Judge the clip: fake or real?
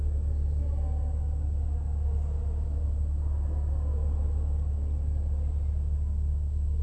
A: real